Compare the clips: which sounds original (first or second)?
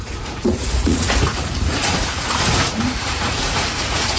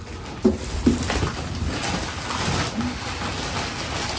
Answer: second